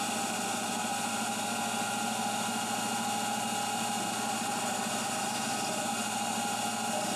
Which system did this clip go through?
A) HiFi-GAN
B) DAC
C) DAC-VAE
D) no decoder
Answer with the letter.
D